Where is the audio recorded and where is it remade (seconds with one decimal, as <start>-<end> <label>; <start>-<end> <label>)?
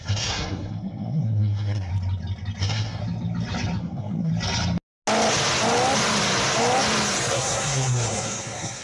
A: 0.0-1.9 remade; 1.9-2.6 recorded; 2.6-3.0 remade; 3.0-3.8 recorded; 3.8-4.3 remade; 4.3-7.3 recorded; 7.3-8.8 remade